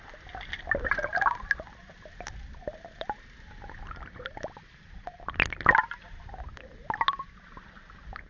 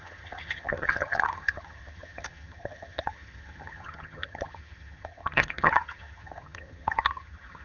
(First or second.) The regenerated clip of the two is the second